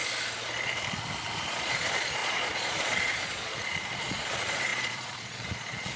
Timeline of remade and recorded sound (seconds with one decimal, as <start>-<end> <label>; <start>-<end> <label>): 0.0-1.5 recorded; 1.5-6.0 remade